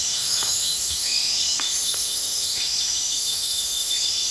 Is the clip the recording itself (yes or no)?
no